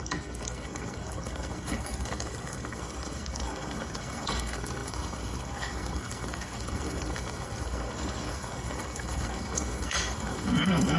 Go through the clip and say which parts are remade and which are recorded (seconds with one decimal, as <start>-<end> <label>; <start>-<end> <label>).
0.0-11.0 remade